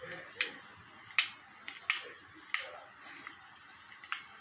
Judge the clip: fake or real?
real